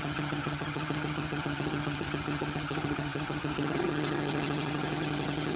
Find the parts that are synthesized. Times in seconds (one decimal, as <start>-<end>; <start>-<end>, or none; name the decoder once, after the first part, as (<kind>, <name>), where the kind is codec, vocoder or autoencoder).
0.0-5.6 (vocoder, HiFi-GAN)